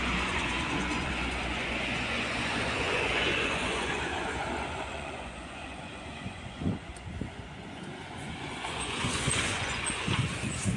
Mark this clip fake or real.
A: fake